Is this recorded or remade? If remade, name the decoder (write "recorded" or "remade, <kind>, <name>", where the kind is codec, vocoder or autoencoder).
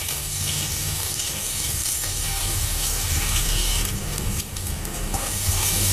remade, codec, DAC